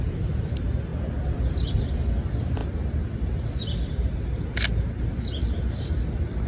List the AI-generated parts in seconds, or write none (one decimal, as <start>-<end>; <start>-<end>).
0.0-2.6